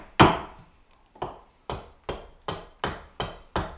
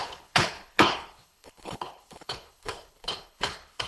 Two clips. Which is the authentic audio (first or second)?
first